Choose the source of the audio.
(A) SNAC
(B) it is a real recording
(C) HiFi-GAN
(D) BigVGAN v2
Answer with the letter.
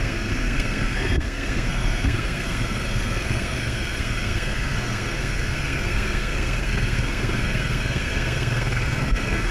A